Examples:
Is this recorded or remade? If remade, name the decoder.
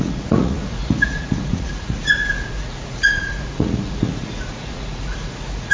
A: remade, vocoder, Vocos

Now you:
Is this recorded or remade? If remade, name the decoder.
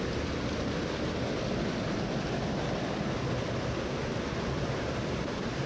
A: recorded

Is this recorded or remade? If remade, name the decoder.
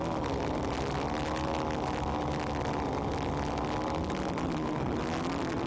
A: recorded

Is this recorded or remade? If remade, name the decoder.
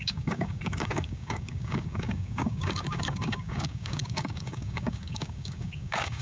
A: remade, codec, DAC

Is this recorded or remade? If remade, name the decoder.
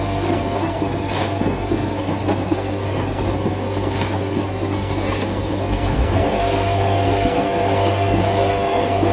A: remade, codec, SNAC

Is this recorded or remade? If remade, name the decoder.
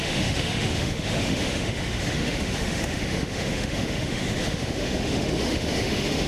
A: remade, autoencoder, DAC-VAE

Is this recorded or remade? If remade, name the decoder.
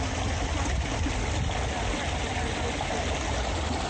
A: recorded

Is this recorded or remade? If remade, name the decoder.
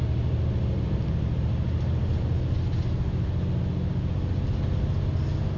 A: recorded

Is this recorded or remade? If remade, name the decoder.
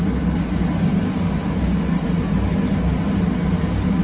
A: recorded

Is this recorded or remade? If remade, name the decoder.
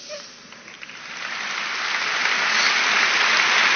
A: recorded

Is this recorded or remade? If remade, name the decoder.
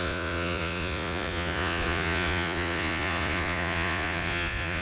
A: remade, vocoder, Vocos